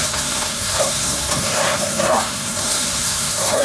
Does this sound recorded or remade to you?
remade